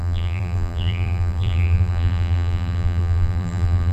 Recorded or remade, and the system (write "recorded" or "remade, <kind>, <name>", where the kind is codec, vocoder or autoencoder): remade, vocoder, BigVGAN v2